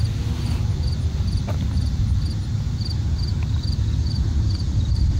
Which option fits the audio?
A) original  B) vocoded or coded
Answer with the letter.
A